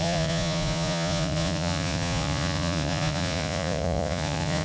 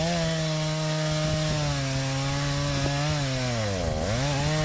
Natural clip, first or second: second